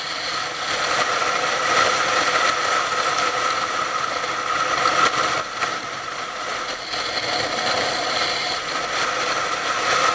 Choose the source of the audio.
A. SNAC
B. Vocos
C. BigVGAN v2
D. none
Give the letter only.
D